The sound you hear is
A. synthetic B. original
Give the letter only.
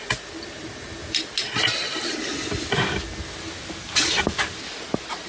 B